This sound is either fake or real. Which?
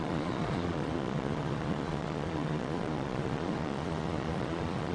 fake